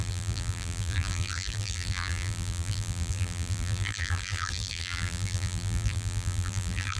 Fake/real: fake